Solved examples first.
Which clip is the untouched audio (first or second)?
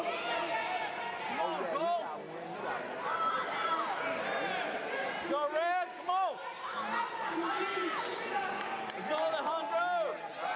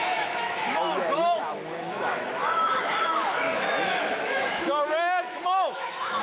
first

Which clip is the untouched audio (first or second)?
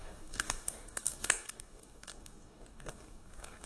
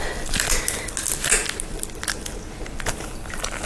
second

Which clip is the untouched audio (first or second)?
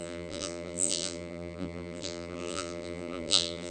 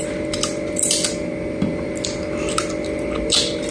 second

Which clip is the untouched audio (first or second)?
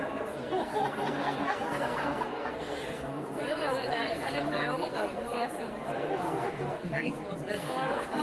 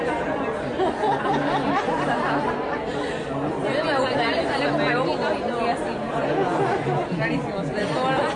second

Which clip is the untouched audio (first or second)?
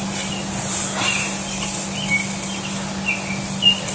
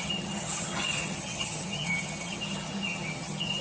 first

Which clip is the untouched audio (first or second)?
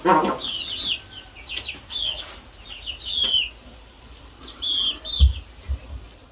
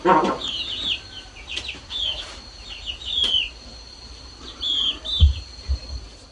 first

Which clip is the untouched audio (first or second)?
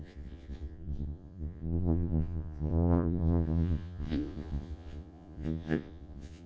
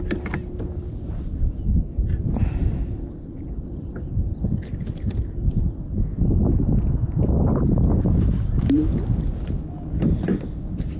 second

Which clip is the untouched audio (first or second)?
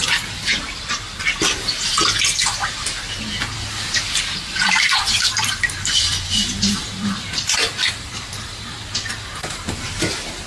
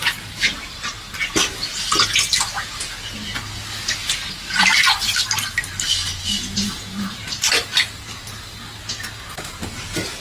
second